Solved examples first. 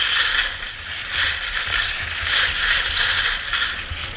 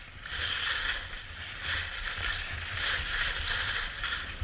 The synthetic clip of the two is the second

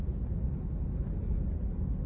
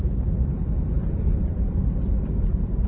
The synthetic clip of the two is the second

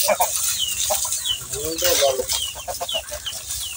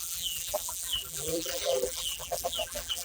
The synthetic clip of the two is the second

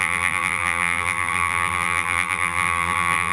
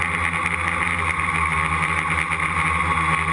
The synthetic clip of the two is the first